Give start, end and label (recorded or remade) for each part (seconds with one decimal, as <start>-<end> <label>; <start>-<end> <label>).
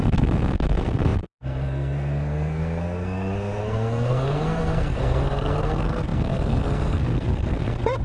0.0-8.0 remade